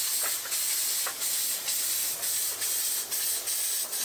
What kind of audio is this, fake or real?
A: real